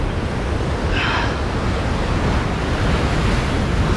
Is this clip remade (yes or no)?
no